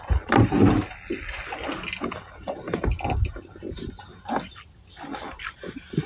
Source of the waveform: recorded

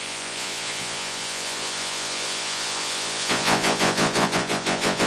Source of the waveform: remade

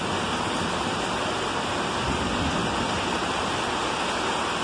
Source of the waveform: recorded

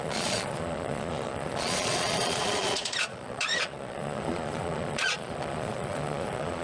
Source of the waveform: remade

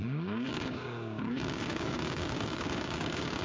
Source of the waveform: remade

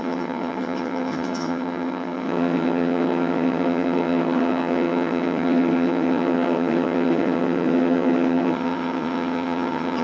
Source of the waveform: remade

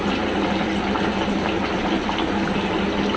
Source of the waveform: recorded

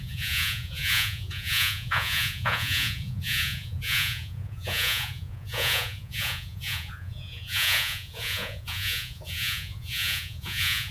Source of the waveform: remade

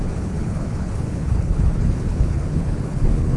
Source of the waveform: remade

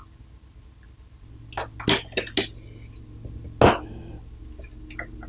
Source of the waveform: recorded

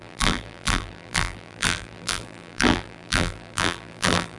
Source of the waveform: remade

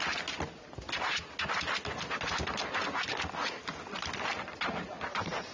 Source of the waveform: recorded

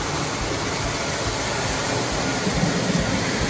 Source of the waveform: recorded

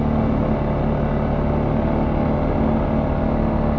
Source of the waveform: recorded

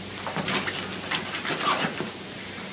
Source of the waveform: recorded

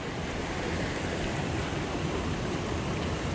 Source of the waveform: recorded